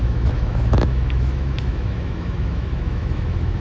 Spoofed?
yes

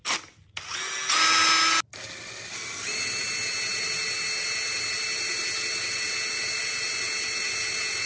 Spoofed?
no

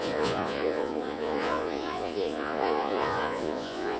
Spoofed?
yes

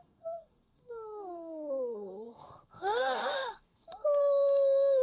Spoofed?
yes